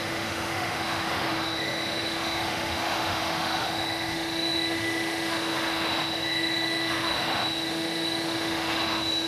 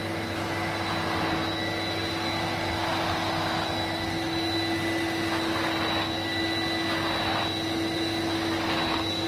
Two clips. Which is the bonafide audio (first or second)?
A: second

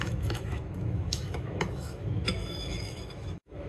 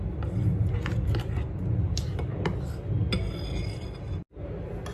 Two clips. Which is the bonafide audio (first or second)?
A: second